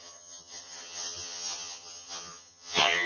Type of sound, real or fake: fake